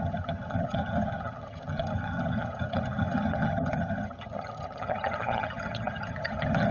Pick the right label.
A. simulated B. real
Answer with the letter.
A